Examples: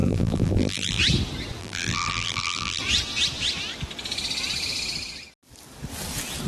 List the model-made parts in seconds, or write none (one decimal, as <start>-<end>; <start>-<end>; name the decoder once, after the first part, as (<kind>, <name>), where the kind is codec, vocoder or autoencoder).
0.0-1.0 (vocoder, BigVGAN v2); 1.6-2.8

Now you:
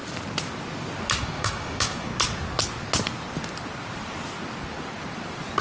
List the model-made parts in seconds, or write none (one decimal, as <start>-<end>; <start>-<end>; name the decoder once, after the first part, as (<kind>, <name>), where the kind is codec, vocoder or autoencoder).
1.2-2.1 (codec, DAC)

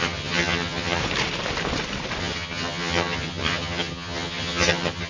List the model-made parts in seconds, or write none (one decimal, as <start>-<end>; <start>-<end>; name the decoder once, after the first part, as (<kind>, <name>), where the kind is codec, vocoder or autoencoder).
0.0-1.0 (vocoder, HiFi-GAN); 2.2-5.1

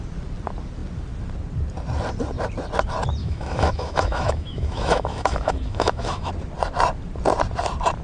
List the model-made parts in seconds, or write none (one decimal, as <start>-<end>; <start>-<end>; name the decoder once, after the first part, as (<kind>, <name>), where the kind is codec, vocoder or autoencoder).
3.2-6.3 (autoencoder, DAC-VAE)

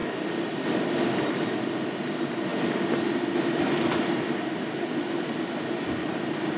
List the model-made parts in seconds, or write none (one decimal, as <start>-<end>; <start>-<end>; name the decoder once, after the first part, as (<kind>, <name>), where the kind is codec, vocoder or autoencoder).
0.0-6.6 (vocoder, BigVGAN v2)